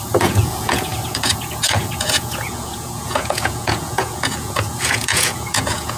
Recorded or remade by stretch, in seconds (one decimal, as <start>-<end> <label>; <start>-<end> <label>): 0.0-6.0 remade